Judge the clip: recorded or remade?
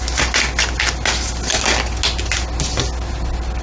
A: recorded